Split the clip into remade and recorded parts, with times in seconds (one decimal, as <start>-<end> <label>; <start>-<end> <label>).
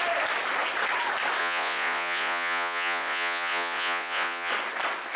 0.0-1.4 recorded; 1.4-4.5 remade; 4.5-5.2 recorded